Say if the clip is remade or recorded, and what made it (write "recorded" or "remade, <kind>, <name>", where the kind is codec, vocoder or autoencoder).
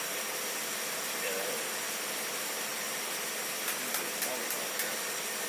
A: recorded